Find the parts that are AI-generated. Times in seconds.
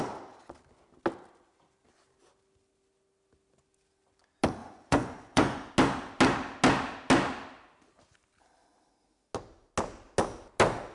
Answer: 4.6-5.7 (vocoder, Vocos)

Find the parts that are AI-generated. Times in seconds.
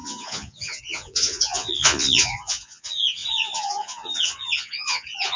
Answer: 0.0-5.4 (vocoder, Vocos)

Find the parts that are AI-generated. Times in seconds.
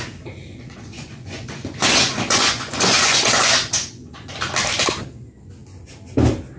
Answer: 0.5-4.5 (vocoder, Vocos)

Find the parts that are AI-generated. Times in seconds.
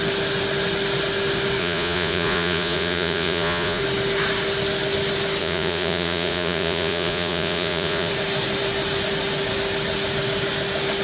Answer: 1.6-3.8 (vocoder, Vocos); 5.4-8.1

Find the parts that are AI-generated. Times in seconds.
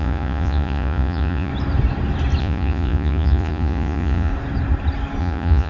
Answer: 0.0-1.5 (vocoder, Vocos); 2.4-4.3; 5.2-5.7